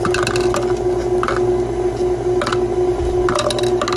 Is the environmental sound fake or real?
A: real